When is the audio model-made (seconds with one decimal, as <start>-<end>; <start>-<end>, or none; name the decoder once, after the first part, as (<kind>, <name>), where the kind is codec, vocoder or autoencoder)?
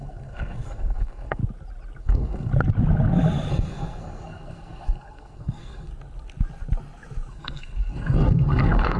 0.0-1.4 (codec, SNAC); 2.0-2.5; 3.5-5.9; 7.3-9.0